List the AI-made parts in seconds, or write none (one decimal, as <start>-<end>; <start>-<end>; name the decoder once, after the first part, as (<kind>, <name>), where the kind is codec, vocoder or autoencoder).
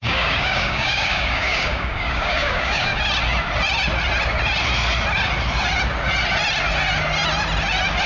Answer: 0.0-2.9 (codec, DAC)